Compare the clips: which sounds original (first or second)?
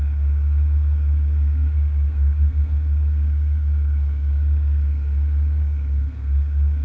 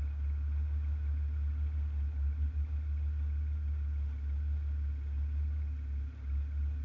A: second